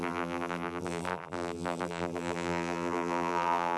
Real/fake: fake